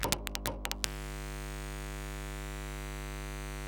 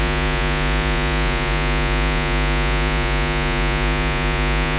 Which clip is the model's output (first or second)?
second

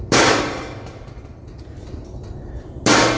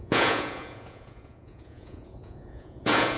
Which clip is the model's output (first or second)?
second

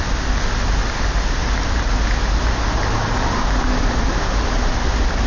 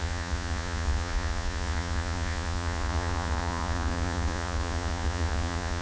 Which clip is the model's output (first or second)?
second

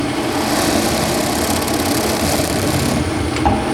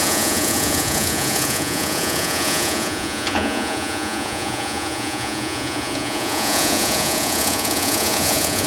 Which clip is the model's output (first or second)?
second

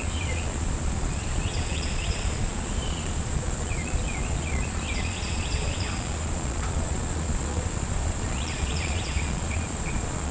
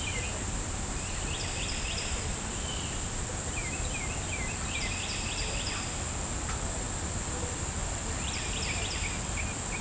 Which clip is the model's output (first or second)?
first